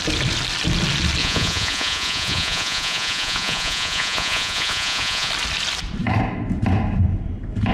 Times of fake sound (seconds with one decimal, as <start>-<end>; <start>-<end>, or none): 1.2-5.3